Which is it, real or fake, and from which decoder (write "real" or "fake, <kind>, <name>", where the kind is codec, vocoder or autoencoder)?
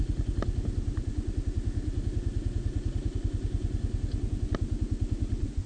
real